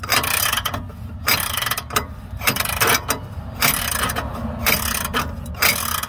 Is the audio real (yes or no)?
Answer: yes